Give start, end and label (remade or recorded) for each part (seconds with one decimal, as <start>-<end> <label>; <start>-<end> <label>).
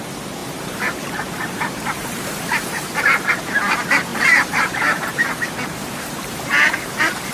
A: 0.0-7.3 remade